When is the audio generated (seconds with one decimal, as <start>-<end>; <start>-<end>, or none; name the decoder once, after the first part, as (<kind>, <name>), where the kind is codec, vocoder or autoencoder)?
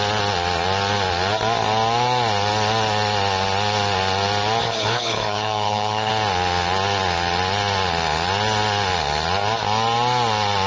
4.6-6.1 (codec, HILCodec)